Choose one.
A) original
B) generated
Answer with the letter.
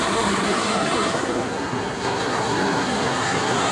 B